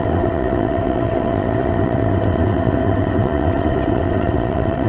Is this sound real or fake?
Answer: fake